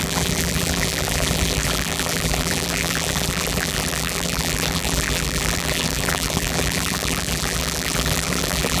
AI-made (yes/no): yes